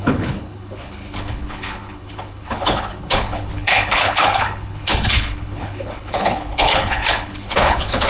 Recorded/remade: remade